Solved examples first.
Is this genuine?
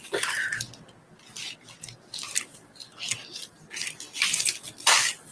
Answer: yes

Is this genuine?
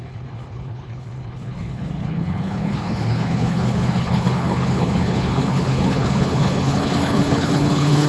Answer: no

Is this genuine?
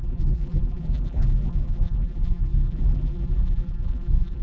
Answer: no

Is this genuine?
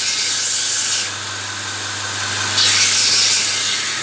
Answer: yes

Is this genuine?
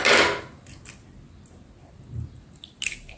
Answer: yes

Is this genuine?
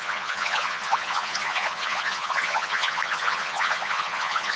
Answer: no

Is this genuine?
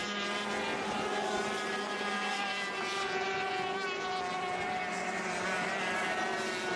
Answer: yes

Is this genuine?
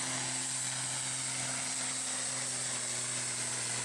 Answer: yes